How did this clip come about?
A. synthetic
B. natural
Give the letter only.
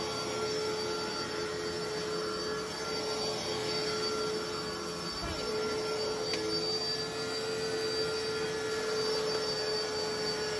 B